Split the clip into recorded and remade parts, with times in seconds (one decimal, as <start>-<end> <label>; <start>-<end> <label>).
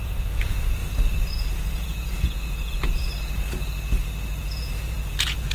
0.0-0.8 remade; 0.8-1.3 recorded; 1.3-3.1 remade; 3.1-4.4 recorded; 4.4-5.5 remade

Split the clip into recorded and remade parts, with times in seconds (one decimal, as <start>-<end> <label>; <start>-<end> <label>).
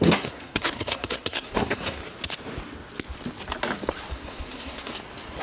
0.0-2.0 remade; 2.0-4.1 recorded; 4.1-4.9 remade; 4.9-5.4 recorded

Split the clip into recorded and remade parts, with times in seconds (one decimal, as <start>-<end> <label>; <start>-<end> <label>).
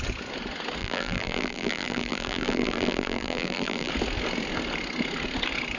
0.0-0.8 recorded; 0.8-3.9 remade; 3.9-5.8 recorded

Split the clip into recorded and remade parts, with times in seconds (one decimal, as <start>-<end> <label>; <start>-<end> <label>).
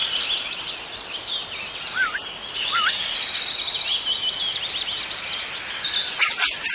0.0-6.7 recorded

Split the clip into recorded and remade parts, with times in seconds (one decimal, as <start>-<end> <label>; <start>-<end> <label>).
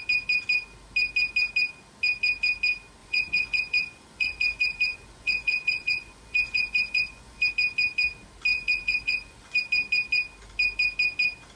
0.0-3.0 recorded; 3.0-7.5 remade; 7.5-8.5 recorded; 8.5-9.6 remade; 9.6-11.6 recorded